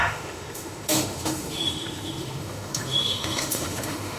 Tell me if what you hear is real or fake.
fake